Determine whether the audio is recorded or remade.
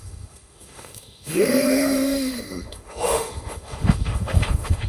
remade